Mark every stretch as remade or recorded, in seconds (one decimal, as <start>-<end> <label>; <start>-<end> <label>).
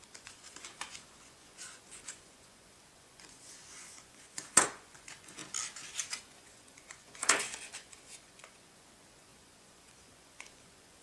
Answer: 0.0-5.4 remade; 5.4-6.1 recorded; 6.1-11.0 remade